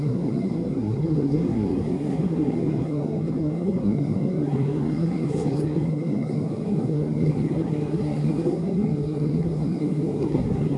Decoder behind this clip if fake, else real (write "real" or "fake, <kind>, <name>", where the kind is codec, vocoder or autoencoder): fake, codec, SNAC